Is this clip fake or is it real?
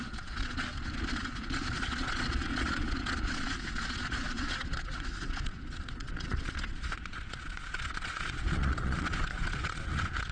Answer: fake